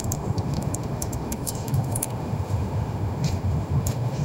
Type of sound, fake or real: fake